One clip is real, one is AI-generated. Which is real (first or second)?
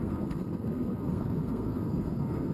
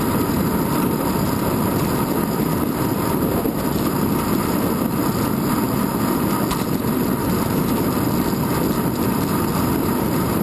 second